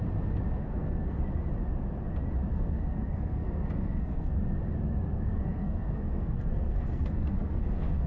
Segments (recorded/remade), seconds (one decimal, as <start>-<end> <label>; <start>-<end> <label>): 0.0-0.6 recorded; 0.6-1.2 remade; 1.2-2.5 recorded; 2.5-4.3 remade; 4.3-5.1 recorded; 5.1-8.1 remade